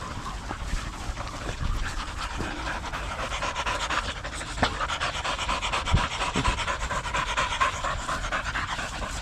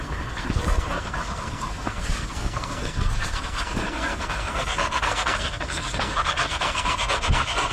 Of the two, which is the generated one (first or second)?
second